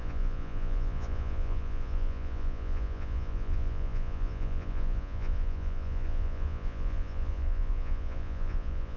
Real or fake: fake